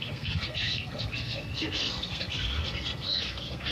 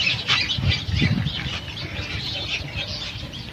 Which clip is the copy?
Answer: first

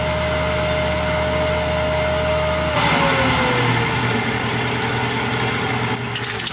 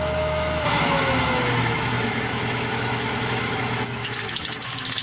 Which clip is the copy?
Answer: second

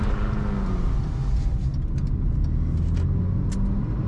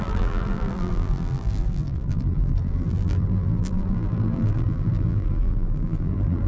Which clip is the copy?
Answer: second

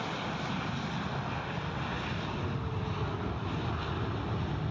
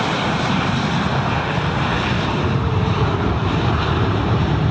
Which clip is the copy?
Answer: second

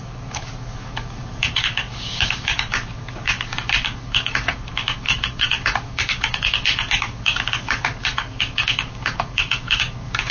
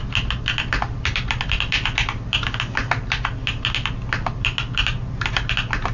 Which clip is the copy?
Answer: first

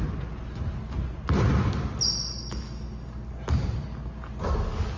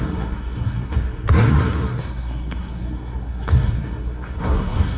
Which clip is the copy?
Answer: second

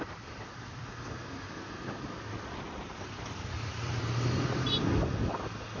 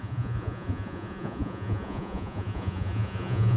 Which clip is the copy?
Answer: second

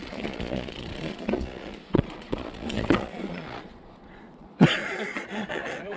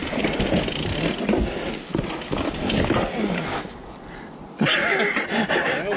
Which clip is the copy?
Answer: first